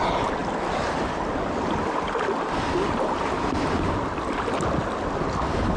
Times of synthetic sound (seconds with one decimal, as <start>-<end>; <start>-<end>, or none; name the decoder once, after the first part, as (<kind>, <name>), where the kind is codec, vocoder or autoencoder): none

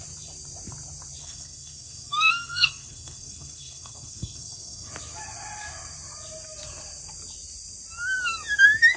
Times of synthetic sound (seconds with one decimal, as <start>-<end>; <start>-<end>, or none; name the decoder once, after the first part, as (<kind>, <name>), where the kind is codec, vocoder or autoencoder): 1.2-4.9 (codec, SNAC)

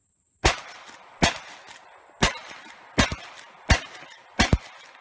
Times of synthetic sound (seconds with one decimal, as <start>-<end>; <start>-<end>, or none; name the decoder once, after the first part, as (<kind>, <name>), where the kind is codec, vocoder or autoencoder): none

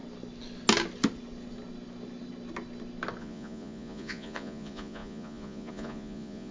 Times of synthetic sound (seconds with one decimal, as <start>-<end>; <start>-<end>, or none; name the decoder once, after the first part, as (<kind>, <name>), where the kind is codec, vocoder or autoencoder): 3.2-6.5 (vocoder, Vocos)